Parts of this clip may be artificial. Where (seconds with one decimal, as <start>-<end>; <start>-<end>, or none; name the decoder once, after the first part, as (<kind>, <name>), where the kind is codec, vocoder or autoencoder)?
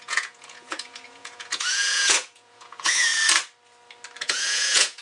0.0-3.1 (vocoder, Vocos); 4.2-5.0